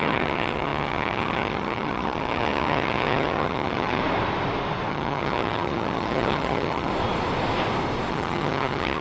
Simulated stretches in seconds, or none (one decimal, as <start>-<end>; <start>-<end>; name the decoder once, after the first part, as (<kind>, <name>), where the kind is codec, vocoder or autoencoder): 0.0-4.0 (vocoder, HiFi-GAN); 4.9-6.9; 8.1-9.0

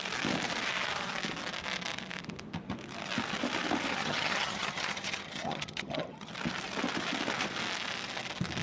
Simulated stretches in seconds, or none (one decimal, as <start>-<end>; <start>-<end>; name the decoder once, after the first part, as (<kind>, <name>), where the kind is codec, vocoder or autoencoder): 3.9-6.3 (vocoder, HiFi-GAN)

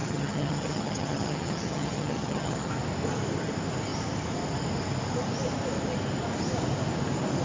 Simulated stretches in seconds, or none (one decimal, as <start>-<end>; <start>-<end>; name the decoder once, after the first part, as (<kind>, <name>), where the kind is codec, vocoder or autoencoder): 0.0-2.7 (vocoder, HiFi-GAN)

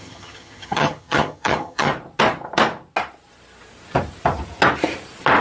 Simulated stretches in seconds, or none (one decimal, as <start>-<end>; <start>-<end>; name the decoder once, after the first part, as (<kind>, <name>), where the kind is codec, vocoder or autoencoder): 0.0-1.9 (vocoder, HiFi-GAN)

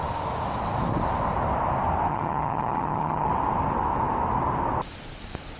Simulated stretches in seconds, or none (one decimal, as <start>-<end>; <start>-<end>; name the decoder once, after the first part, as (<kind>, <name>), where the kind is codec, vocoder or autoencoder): 2.1-3.3 (vocoder, HiFi-GAN)

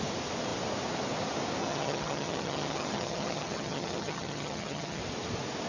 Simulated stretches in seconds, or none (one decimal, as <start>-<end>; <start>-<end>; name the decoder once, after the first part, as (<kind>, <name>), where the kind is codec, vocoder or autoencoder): 1.6-5.0 (vocoder, HiFi-GAN)

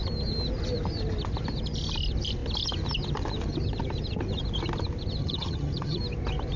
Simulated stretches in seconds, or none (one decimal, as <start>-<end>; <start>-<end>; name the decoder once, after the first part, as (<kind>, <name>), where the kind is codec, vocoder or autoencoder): 5.2-6.0 (vocoder, HiFi-GAN)

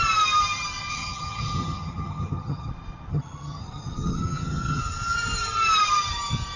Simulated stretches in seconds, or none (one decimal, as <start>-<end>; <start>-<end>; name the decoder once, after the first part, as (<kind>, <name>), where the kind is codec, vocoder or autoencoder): 0.9-2.7 (vocoder, HiFi-GAN); 3.1-4.8